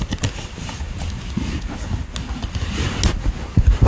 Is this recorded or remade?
recorded